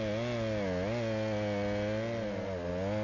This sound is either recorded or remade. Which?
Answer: recorded